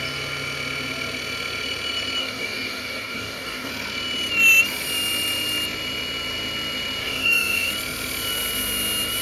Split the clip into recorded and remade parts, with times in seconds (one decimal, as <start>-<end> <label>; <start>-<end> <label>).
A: 0.0-2.2 recorded; 2.2-3.7 remade; 3.7-7.0 recorded; 7.0-7.7 remade; 7.7-9.2 recorded